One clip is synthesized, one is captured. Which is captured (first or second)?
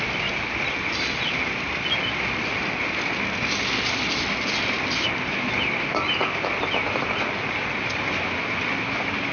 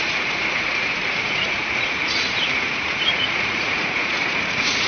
first